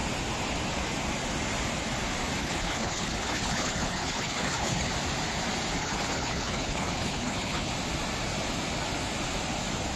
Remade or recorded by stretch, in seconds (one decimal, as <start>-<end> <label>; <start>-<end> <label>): 0.0-2.4 recorded; 2.4-4.9 remade; 4.9-5.8 recorded; 5.8-7.7 remade; 7.7-10.0 recorded